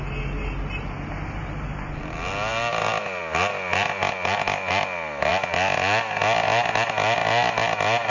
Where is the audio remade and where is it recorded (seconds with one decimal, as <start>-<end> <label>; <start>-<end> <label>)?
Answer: 0.0-8.1 recorded